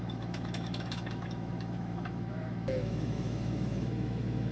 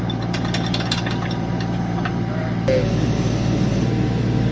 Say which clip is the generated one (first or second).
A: first